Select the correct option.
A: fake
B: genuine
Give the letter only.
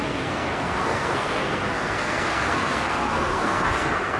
A